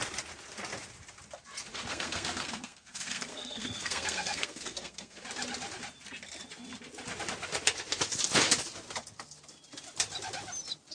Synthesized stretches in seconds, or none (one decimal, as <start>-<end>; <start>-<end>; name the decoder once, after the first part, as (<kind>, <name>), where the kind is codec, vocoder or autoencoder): 1.9-5.2 (codec, SNAC)